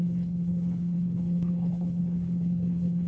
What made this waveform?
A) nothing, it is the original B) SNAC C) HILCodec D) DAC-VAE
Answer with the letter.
C